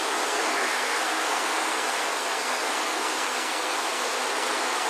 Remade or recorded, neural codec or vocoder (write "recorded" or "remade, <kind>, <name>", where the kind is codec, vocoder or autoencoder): remade, codec, SNAC